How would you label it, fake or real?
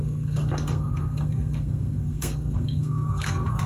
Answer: fake